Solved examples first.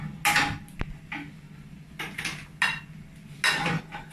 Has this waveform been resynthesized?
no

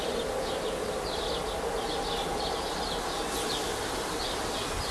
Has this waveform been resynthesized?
no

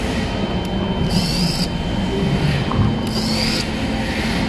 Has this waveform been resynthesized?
no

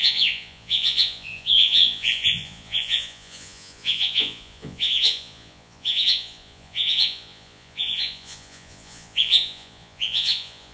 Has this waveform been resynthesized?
yes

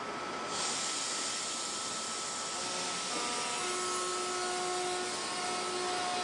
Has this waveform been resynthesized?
no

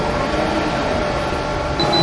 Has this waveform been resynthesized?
no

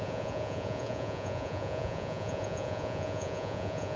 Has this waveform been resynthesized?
yes